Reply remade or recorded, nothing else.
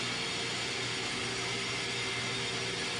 recorded